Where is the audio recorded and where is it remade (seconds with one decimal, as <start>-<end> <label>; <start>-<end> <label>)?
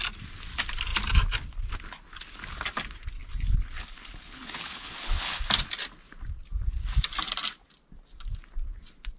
0.0-3.2 recorded; 3.2-5.3 remade; 5.3-9.2 recorded